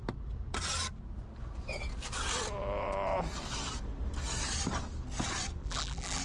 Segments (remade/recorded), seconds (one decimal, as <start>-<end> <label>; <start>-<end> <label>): 0.0-5.6 recorded; 5.6-6.2 remade